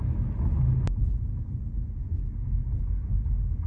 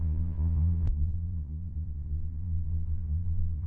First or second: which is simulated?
second